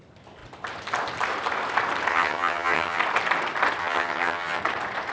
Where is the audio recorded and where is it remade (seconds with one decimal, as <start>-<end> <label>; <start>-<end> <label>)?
0.0-2.1 recorded; 2.1-3.0 remade; 3.0-3.8 recorded; 3.8-4.6 remade; 4.6-5.1 recorded